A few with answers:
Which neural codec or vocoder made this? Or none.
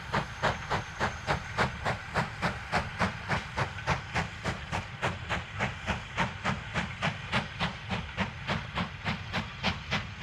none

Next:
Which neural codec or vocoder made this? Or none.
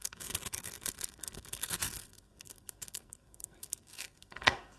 codec, SNAC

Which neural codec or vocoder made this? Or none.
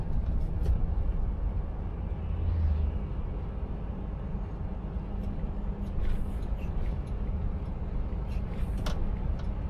none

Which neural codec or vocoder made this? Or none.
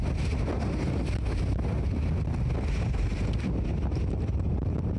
none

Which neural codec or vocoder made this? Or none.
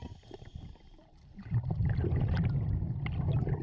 none